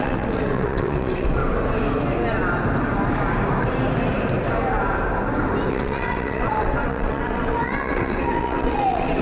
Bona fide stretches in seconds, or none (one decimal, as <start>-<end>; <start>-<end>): 1.4-5.7